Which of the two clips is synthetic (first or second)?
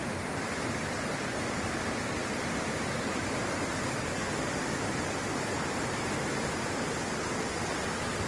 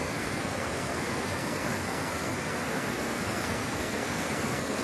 second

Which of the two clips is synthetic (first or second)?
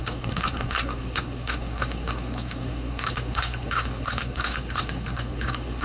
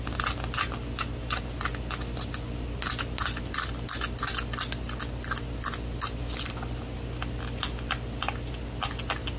first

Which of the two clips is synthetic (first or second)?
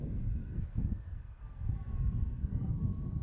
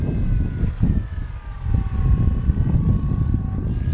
first